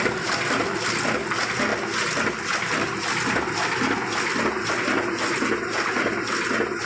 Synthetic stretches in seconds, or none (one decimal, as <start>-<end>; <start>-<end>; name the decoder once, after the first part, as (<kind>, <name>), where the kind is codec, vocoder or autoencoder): none